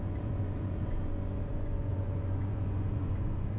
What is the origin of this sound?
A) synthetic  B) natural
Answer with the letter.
A